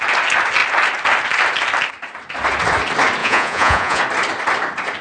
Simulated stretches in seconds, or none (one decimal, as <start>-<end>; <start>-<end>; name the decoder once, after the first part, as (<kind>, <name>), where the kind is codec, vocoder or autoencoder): 3.2-4.0 (vocoder, Vocos)